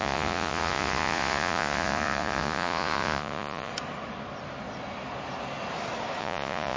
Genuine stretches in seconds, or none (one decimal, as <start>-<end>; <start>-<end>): 3.7-6.2